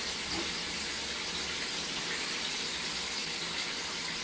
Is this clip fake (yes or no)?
no